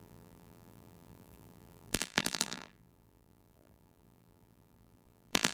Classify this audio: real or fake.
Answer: fake